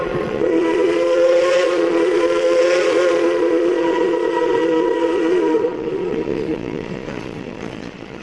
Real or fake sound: fake